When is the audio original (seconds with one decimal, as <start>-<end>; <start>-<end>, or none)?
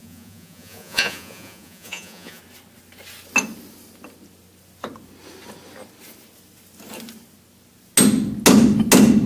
2.4-9.3